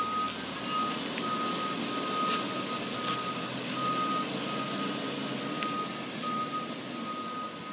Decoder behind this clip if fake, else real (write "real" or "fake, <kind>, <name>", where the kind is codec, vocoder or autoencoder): real